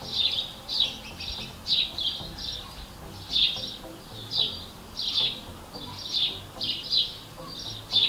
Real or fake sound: real